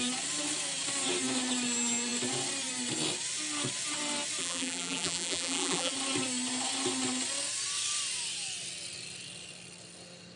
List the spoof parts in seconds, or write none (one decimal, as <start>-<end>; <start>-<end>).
4.4-5.9